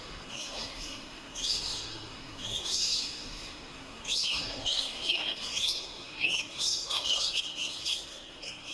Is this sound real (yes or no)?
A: no